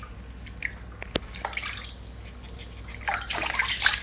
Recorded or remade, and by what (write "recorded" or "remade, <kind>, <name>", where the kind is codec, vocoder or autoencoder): recorded